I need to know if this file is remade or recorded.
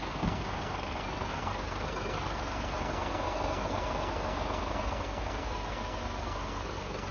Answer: remade